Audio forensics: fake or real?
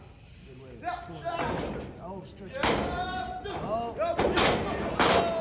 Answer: real